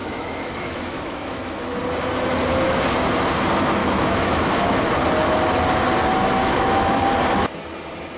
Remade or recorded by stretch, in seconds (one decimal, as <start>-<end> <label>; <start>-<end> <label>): 0.0-1.8 remade; 1.8-3.8 recorded; 3.8-4.8 remade; 4.8-6.2 recorded; 6.2-7.0 remade; 7.0-8.2 recorded